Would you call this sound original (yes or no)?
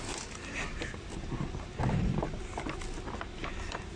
yes